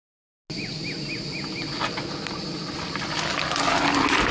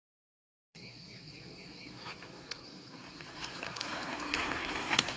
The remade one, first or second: second